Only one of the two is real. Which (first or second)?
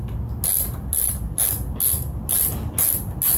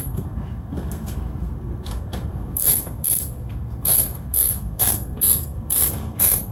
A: first